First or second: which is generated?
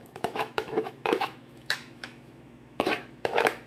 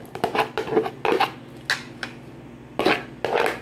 first